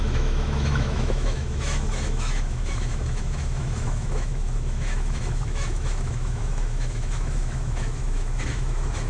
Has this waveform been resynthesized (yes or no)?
yes